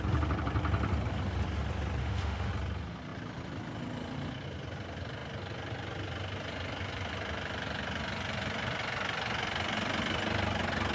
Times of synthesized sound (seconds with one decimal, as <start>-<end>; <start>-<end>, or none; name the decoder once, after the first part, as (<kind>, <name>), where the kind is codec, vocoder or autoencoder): 2.0-2.5 (autoencoder, DAC-VAE)